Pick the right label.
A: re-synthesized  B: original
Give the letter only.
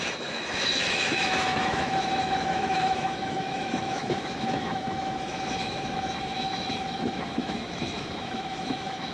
A